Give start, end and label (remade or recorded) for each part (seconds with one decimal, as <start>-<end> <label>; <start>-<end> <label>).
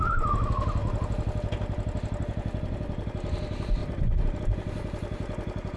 0.0-3.8 recorded; 3.8-4.4 remade; 4.4-5.8 recorded